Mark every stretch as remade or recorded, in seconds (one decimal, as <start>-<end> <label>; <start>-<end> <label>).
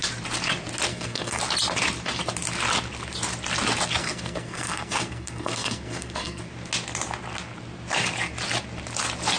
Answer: 0.0-0.9 recorded; 0.9-1.4 remade; 1.4-4.0 recorded; 4.0-6.4 remade; 6.4-9.4 recorded